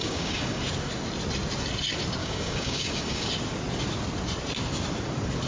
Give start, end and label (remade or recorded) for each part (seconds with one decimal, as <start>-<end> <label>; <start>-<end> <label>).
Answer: 0.0-0.6 remade; 0.6-2.2 recorded; 2.2-3.3 remade; 3.3-5.5 recorded

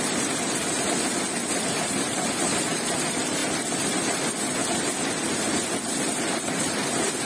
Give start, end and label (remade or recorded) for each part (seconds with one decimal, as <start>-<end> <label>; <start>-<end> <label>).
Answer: 0.0-7.2 recorded

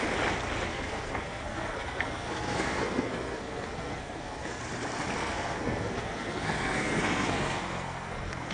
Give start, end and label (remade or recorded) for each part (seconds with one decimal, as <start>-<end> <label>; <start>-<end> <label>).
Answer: 0.0-0.7 recorded; 0.7-4.6 remade; 4.6-5.2 recorded; 5.2-8.5 remade

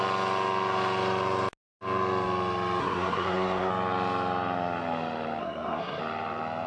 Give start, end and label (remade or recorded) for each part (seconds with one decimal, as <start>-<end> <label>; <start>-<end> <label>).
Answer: 0.0-2.8 recorded; 2.8-3.7 remade; 3.7-5.4 recorded; 5.4-6.0 remade; 6.0-6.7 recorded

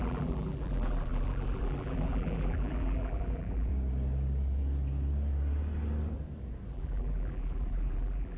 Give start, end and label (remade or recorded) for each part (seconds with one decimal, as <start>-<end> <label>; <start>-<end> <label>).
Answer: 0.0-3.7 remade; 3.7-6.7 recorded; 6.7-8.4 remade

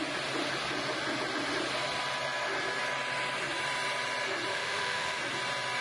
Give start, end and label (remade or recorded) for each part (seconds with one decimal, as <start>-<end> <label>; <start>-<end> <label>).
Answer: 0.0-4.5 recorded; 4.5-5.2 remade; 5.2-5.8 recorded